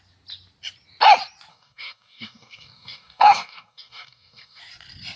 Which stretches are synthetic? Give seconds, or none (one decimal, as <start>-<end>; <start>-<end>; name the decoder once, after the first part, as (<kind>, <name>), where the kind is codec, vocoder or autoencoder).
1.5-4.6 (codec, DAC)